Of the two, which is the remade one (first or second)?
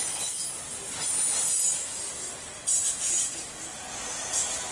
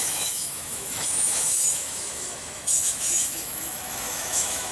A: second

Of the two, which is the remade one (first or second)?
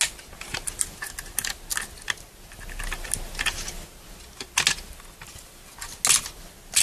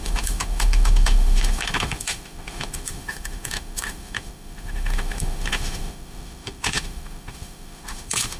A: second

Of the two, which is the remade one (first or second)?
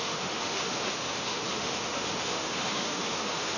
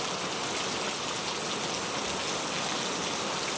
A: first